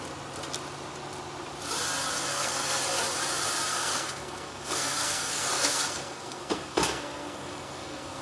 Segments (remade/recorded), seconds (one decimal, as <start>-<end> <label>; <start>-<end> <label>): 0.0-2.3 recorded; 2.3-2.8 remade; 2.8-3.7 recorded; 3.7-8.2 remade